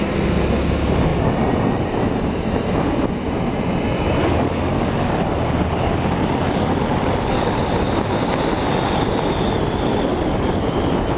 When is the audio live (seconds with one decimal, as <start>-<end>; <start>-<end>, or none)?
0.0-4.2; 7.6-10.1; 10.7-11.2